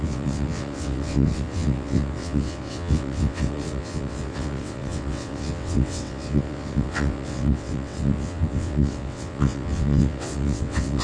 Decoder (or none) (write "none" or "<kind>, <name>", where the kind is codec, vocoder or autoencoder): vocoder, WaveNeXt